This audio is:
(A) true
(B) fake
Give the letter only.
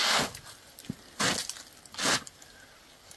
A